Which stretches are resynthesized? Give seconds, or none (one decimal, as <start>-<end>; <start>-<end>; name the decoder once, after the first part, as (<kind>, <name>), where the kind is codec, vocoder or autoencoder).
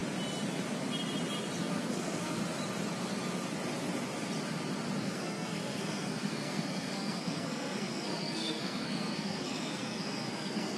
1.6-2.4 (codec, SNAC); 5.0-10.8